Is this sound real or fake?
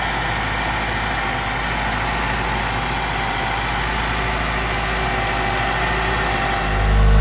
real